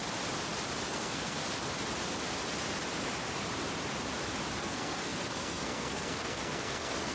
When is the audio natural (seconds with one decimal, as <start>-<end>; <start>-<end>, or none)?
0.0-0.9; 1.4-4.6